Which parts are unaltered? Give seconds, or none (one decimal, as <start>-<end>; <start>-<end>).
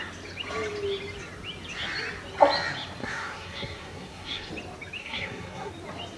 0.0-3.0; 4.5-5.0; 5.7-6.2